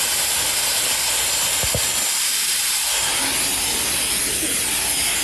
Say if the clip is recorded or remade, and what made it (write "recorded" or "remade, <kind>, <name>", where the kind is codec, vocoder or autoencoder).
recorded